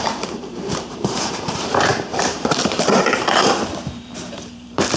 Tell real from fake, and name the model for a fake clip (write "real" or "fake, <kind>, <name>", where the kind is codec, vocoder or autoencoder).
fake, vocoder, BigVGAN v2